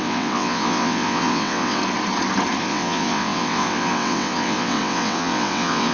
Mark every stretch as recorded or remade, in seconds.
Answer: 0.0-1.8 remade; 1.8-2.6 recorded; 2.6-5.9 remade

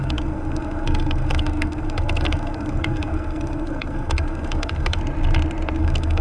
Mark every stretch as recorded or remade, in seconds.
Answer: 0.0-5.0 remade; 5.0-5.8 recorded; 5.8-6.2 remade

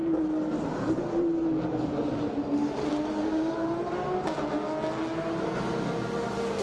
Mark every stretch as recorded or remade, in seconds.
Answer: 0.0-3.8 remade; 3.8-6.6 recorded

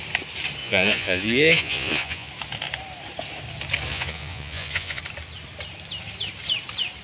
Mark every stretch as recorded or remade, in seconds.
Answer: 0.0-0.6 recorded; 0.6-2.3 remade; 2.3-3.9 recorded; 3.9-5.0 remade; 5.0-7.0 recorded